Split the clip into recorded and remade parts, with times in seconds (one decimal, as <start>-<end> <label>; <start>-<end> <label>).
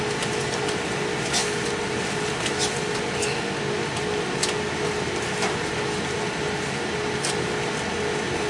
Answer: 0.0-8.5 recorded